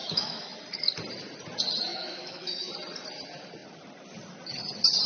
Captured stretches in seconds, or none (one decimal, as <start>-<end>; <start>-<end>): 0.6-1.9; 2.7-5.1